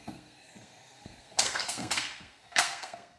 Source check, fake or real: fake